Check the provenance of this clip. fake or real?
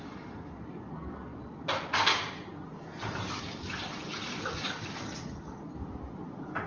real